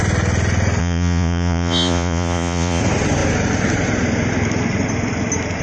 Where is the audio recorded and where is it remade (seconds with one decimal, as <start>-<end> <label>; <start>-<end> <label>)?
0.0-0.8 recorded; 0.8-2.8 remade; 2.8-5.6 recorded